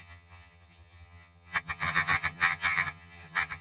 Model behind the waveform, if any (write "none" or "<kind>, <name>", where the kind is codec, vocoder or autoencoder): vocoder, HiFi-GAN